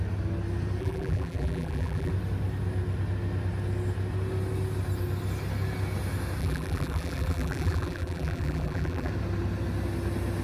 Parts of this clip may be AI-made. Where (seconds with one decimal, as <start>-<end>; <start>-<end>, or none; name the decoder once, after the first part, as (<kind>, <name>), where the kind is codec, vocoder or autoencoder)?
0.8-2.1 (vocoder, BigVGAN v2); 6.4-9.1